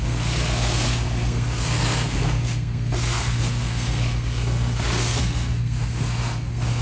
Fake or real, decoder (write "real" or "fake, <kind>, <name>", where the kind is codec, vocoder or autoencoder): fake, codec, SNAC